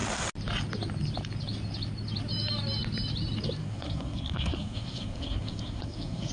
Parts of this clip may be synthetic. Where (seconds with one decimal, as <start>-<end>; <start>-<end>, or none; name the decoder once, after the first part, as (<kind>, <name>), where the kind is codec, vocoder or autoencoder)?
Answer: 3.6-6.3 (codec, SNAC)